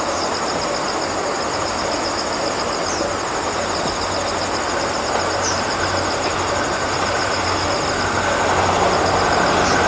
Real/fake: real